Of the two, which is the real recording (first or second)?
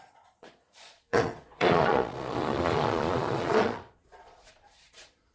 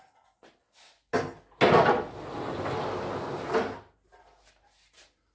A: second